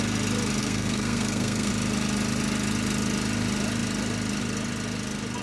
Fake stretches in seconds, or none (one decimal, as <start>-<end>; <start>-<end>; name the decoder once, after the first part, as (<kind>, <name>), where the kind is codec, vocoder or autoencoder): 0.6-1.7 (codec, SNAC)